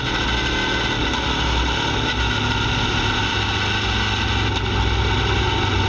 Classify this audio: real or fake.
real